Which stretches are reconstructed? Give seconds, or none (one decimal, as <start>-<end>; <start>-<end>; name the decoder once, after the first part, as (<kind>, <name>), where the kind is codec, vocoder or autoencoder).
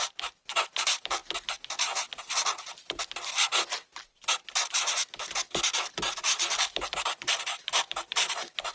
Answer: 0.0-1.2 (vocoder, BigVGAN v2); 5.8-8.7